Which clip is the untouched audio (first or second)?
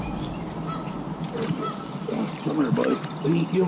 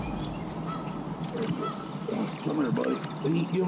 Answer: second